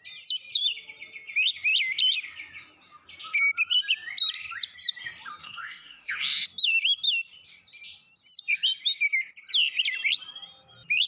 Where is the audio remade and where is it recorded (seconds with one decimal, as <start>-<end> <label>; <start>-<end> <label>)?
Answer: 0.0-5.4 recorded; 5.4-6.1 remade; 6.1-11.1 recorded